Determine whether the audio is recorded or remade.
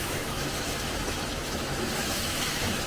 remade